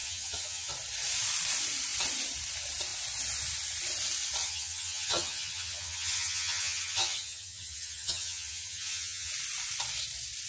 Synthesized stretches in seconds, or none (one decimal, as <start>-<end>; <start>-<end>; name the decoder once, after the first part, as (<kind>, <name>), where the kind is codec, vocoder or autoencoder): 0.0-0.7 (vocoder, HiFi-GAN); 4.4-9.3